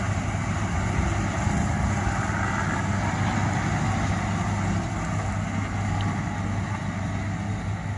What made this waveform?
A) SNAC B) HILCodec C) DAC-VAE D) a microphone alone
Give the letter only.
D